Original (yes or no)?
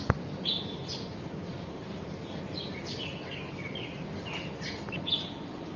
yes